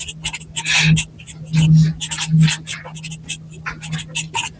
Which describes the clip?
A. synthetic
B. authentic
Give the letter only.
B